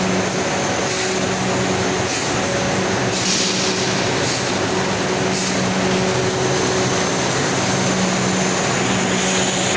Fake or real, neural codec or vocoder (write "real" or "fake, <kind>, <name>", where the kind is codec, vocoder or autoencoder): real